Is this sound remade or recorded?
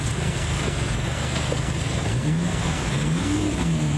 remade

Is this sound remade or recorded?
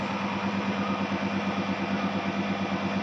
recorded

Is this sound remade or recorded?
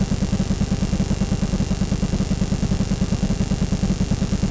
recorded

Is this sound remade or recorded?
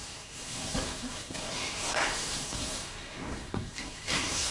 remade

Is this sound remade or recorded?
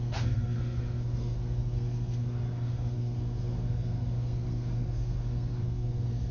remade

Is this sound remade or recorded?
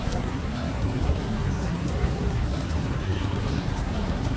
remade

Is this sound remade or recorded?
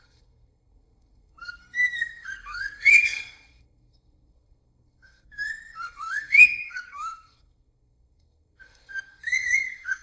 remade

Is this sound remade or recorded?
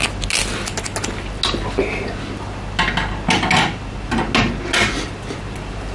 recorded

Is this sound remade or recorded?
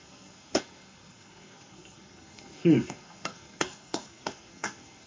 remade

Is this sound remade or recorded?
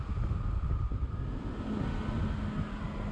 recorded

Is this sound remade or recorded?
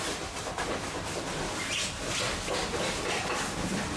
recorded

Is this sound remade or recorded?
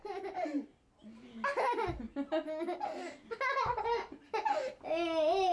recorded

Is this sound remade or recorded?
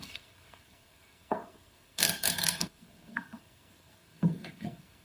remade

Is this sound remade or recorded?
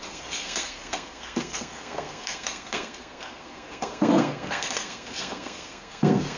remade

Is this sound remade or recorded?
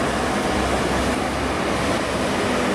recorded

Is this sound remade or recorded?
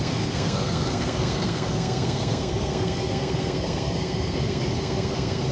remade